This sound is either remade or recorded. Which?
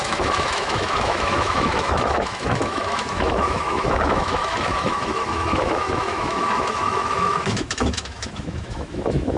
remade